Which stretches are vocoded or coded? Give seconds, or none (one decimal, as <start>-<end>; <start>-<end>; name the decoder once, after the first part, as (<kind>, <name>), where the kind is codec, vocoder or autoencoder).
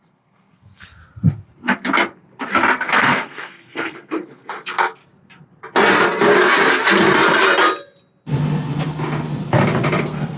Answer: 0.0-1.0 (codec, SNAC); 2.7-5.0; 10.0-10.4